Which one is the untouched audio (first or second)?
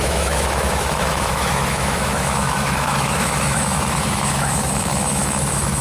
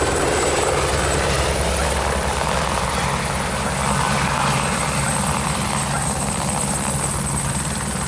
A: second